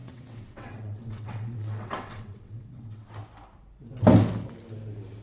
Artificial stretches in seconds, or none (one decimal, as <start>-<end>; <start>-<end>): 0.0-3.1